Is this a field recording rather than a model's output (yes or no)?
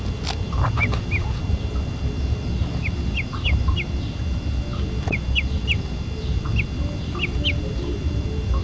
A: yes